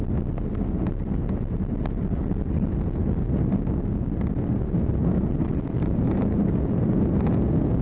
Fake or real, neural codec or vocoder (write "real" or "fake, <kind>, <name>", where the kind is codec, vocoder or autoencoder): real